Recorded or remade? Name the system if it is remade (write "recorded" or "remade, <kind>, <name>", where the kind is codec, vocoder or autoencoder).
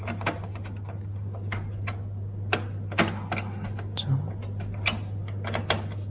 recorded